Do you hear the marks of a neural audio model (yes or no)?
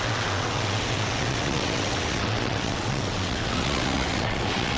yes